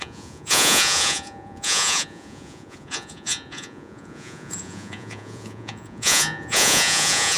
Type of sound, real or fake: fake